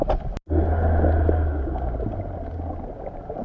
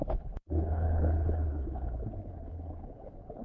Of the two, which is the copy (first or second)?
second